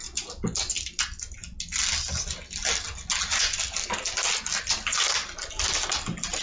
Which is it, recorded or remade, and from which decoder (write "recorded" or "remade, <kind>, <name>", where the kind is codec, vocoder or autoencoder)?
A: recorded